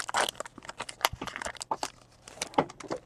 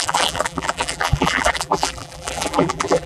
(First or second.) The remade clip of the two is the second